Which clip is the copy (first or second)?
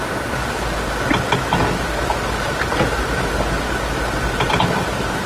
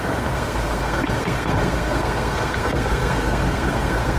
second